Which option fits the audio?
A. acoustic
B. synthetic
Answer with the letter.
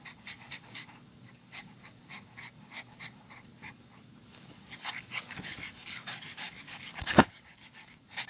B